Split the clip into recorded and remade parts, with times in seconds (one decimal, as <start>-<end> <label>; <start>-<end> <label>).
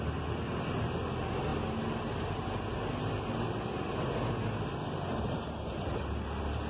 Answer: 0.0-6.7 recorded